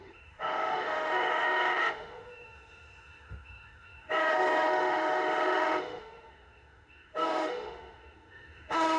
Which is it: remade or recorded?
remade